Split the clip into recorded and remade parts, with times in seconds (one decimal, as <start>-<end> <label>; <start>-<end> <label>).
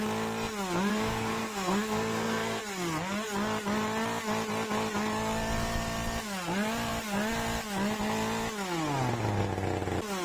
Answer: 0.0-0.9 recorded; 0.9-2.6 remade; 2.6-10.2 recorded